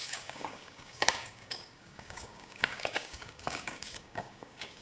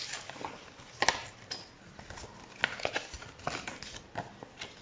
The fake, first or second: first